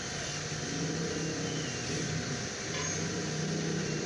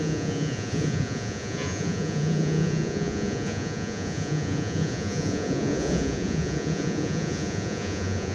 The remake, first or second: second